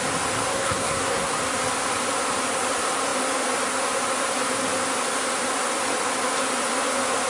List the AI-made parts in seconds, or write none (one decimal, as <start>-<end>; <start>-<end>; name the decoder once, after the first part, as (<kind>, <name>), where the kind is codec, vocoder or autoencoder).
0.5-1.4 (codec, SNAC)